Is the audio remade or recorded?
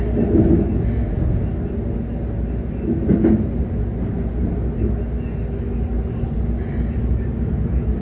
recorded